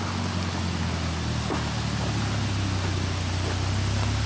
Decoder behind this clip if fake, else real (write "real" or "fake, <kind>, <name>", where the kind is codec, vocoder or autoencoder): real